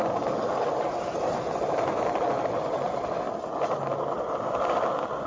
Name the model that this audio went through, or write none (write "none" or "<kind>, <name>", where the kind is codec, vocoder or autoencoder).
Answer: none